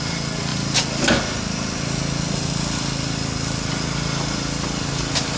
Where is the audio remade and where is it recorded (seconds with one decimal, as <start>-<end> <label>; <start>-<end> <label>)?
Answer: 0.0-5.4 recorded

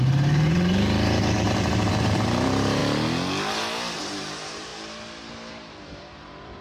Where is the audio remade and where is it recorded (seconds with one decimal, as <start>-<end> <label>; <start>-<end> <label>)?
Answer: 0.0-2.8 remade; 2.8-4.0 recorded; 4.0-4.7 remade; 4.7-5.5 recorded; 5.5-6.6 remade

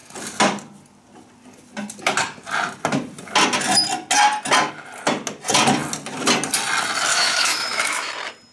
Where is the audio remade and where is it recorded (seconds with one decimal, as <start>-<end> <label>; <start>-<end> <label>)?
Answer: 0.0-7.1 recorded; 7.1-8.1 remade; 8.1-8.5 recorded

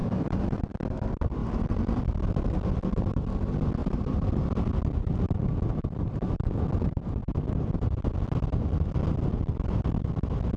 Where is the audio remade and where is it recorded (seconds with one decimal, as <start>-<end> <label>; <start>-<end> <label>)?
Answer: 0.0-0.6 remade; 0.6-1.4 recorded; 1.4-2.0 remade; 2.0-3.8 recorded; 3.8-4.7 remade; 4.7-10.6 recorded

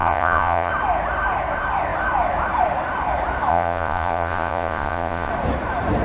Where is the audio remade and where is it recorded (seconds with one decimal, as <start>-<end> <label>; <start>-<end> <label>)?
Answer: 0.0-0.7 remade; 0.7-3.5 recorded; 3.5-5.3 remade; 5.3-6.0 recorded

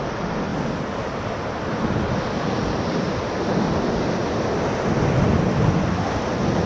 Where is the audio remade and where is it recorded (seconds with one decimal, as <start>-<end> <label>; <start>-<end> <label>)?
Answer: 0.0-6.7 recorded

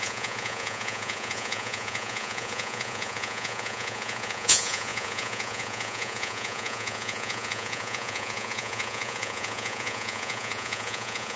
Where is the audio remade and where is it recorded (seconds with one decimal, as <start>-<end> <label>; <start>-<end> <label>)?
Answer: 0.0-11.4 remade